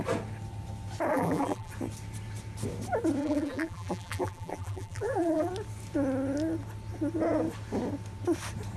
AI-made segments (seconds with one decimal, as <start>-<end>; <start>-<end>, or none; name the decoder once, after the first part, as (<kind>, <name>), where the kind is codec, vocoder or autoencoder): 1.1-1.7 (vocoder, BigVGAN v2); 3.2-5.5